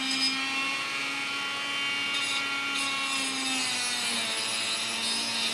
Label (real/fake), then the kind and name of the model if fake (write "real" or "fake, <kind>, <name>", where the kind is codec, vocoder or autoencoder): real